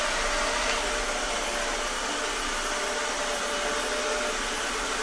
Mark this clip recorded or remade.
recorded